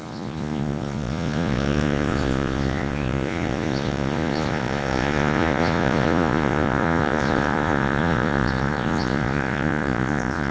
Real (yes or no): no